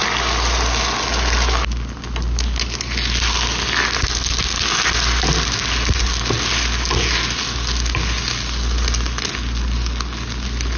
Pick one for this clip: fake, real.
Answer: real